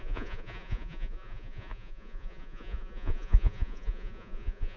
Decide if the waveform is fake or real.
fake